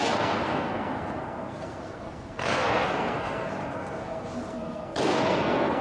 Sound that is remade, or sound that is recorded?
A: remade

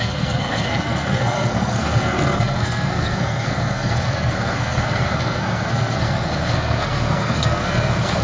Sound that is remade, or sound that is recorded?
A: remade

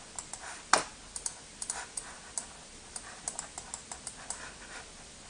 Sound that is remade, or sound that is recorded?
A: recorded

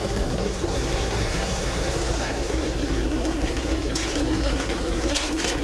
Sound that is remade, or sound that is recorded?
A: remade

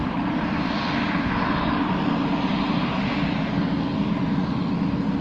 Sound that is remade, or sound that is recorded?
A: recorded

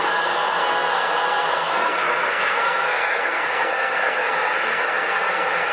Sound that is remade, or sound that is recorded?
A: remade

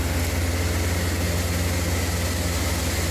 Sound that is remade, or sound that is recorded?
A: recorded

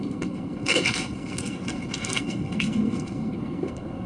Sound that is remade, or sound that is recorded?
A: remade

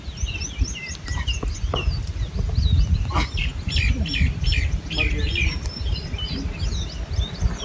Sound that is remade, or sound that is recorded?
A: recorded